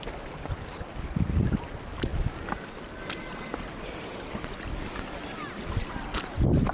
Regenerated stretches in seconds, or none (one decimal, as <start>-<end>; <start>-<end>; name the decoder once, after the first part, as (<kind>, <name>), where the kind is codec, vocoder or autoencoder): none